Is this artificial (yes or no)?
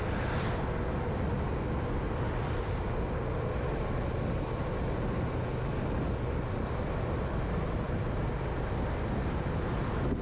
no